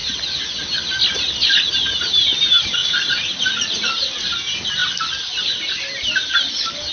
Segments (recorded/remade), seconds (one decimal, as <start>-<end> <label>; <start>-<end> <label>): 0.0-2.8 recorded; 2.8-3.8 remade; 3.8-6.9 recorded